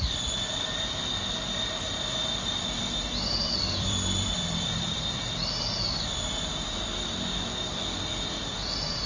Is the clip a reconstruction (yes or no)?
yes